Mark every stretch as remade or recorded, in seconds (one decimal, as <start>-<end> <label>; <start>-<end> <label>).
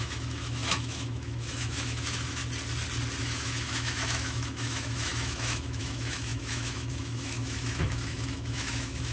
0.0-2.4 remade; 2.4-3.2 recorded; 3.2-9.1 remade